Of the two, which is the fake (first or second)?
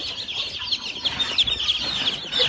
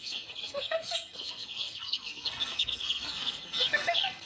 second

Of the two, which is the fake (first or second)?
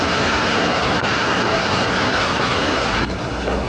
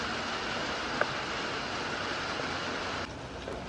first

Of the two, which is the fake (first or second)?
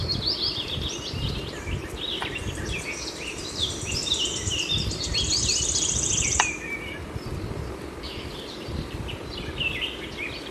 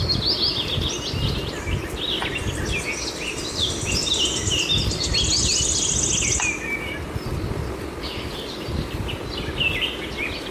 first